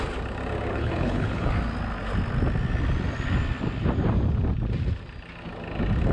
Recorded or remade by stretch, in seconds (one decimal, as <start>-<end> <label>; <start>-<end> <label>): 0.0-0.7 recorded; 0.7-1.5 remade; 1.5-6.1 recorded